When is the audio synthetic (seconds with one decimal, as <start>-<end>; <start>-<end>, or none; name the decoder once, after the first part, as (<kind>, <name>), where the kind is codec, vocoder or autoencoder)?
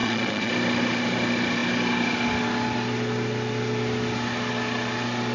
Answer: 0.0-0.5 (vocoder, Vocos)